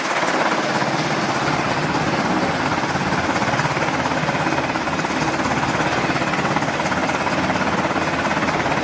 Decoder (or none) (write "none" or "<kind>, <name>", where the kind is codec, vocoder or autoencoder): none